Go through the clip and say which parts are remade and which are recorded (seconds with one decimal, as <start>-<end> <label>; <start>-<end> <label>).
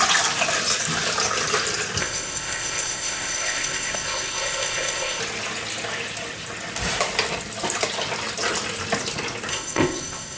0.0-2.0 recorded; 2.0-5.2 remade; 5.2-9.5 recorded; 9.5-10.4 remade